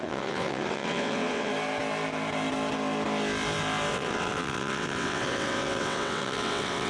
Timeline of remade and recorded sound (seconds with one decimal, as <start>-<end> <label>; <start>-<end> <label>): 0.0-1.5 remade; 1.5-3.9 recorded; 3.9-6.9 remade